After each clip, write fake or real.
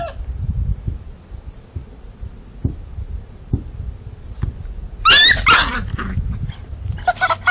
real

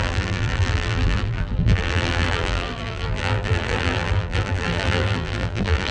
fake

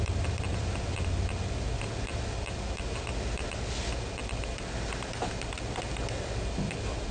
real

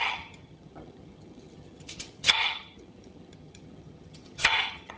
fake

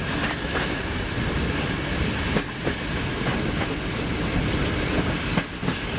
real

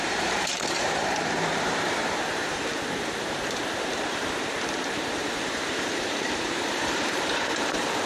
fake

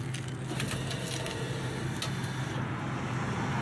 real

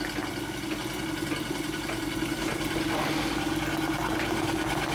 real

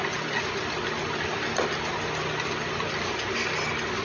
real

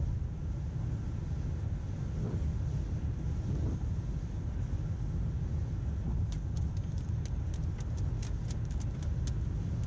real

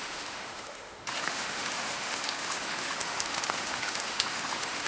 fake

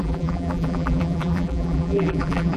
fake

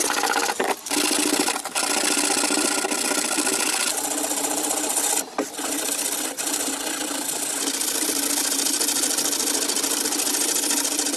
fake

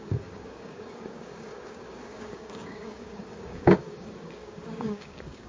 fake